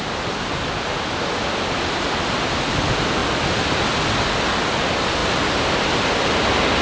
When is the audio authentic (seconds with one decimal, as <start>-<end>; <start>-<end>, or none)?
0.0-6.8